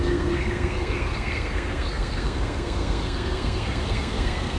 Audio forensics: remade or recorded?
remade